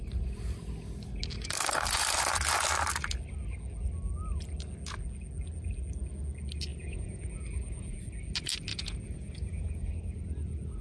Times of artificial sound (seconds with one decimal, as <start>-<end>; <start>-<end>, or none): 6.7-8.0; 8.7-9.9